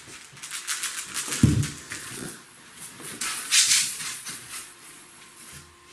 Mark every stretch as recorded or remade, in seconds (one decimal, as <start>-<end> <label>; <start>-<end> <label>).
0.0-2.0 recorded; 2.0-5.5 remade; 5.5-5.9 recorded